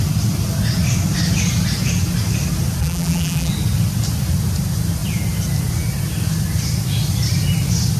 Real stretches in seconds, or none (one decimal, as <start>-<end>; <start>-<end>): 0.0-2.8; 3.5-8.0

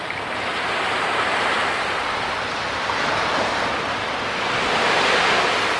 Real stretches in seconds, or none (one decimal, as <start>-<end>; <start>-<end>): 0.0-5.8